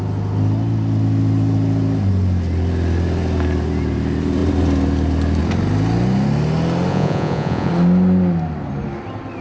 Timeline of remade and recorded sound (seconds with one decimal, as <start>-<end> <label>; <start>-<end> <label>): 0.0-6.9 recorded; 6.9-7.7 remade; 7.7-9.4 recorded